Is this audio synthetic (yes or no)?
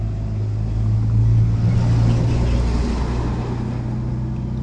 no